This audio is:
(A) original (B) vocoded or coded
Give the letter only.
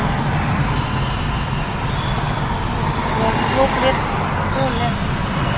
A